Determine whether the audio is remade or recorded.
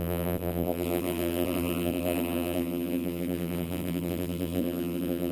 remade